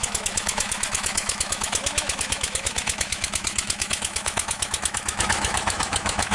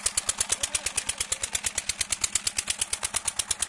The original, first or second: second